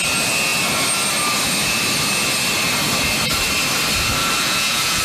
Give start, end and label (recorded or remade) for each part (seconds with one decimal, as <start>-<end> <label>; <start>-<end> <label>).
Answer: 0.0-4.2 recorded; 4.2-5.0 remade